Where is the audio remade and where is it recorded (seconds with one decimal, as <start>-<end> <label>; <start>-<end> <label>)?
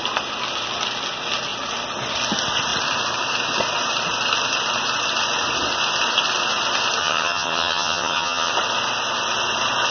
0.0-7.0 recorded; 7.0-8.5 remade; 8.5-9.9 recorded